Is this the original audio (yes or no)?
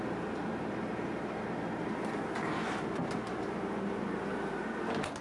yes